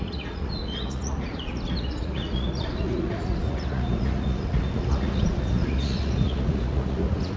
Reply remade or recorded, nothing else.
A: remade